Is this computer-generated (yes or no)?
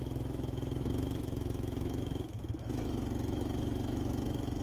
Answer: yes